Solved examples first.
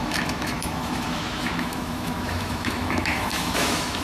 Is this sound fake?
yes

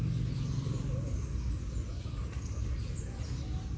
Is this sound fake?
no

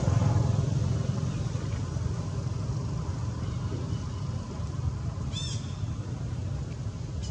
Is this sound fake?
no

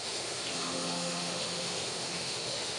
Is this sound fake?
yes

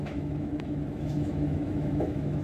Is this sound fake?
yes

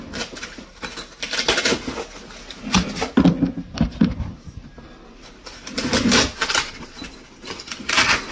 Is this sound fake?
no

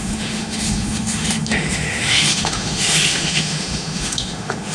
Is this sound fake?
yes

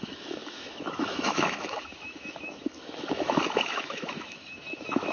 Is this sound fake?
yes